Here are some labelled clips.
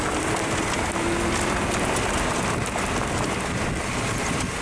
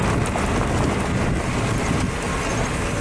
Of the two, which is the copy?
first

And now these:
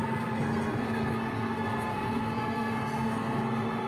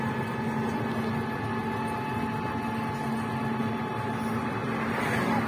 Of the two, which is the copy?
first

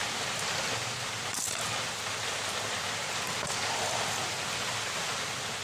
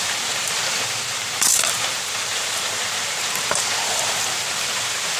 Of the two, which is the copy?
second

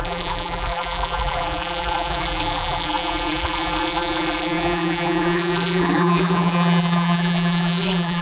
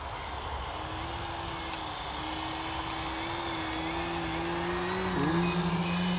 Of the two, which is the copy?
first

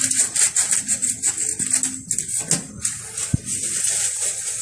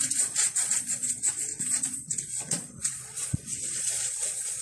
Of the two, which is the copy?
second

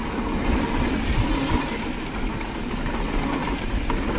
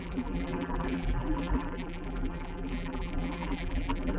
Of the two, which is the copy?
second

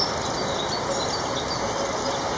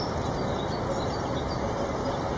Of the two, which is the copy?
second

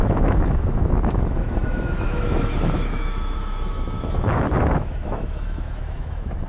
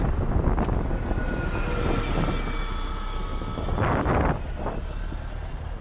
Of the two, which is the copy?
first